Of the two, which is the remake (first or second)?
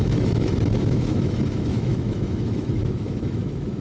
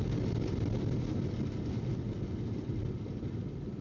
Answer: first